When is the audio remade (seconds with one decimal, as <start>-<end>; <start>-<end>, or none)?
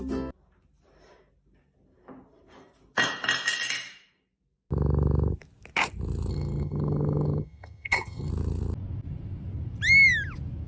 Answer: 6.3-8.3